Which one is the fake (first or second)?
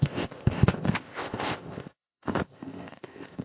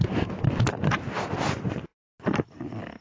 first